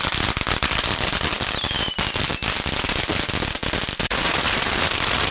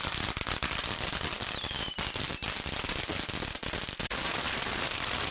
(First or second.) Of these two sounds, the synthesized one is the second